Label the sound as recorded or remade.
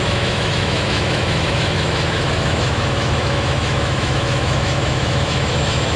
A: remade